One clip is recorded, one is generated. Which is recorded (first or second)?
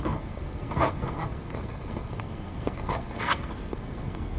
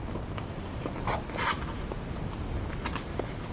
second